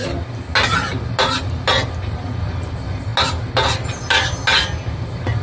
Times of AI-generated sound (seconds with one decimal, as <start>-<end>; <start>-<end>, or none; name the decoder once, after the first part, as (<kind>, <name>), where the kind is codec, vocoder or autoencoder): none

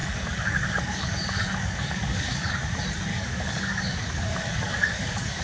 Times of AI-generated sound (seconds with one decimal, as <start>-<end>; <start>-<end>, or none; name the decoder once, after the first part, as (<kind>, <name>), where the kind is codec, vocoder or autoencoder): 0.0-2.5 (codec, DAC); 3.1-5.4

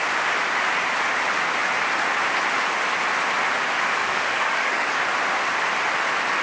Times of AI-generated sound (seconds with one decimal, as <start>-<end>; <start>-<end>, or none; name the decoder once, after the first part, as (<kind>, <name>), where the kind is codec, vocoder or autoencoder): 4.0-5.0 (codec, DAC)

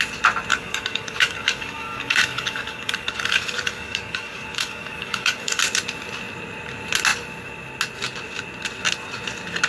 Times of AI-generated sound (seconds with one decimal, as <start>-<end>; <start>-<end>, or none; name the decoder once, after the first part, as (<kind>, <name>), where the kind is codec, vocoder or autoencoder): 0.5-5.6 (codec, DAC)

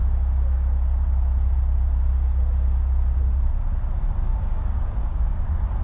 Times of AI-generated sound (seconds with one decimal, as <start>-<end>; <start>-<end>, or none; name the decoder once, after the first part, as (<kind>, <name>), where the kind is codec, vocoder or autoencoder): 4.3-5.3 (codec, DAC)

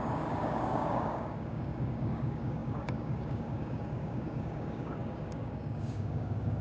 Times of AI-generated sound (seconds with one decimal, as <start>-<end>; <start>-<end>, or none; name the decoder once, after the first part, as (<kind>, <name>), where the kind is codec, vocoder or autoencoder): 0.0-6.6 (codec, DAC)